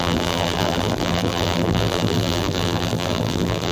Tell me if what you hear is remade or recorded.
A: remade